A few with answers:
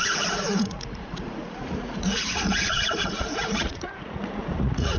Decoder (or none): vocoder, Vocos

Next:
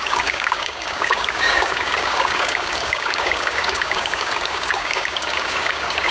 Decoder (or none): codec, DAC